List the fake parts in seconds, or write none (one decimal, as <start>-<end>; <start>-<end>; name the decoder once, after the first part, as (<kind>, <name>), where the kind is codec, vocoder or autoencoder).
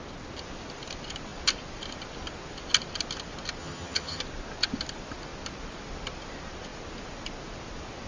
3.6-4.2 (vocoder, HiFi-GAN)